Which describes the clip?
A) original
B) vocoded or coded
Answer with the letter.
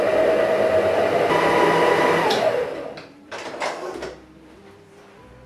A